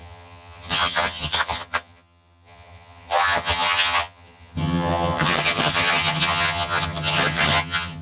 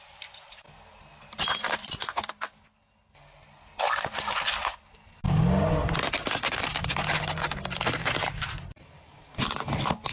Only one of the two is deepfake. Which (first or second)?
first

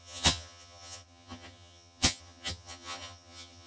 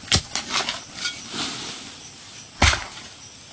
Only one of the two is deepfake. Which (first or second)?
first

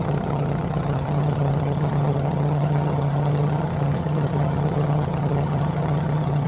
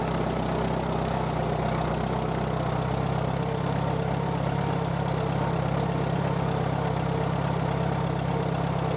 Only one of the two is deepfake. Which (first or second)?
first